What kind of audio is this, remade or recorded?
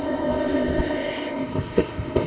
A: remade